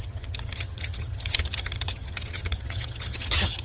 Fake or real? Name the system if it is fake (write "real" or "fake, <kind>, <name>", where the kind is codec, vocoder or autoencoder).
fake, vocoder, HiFi-GAN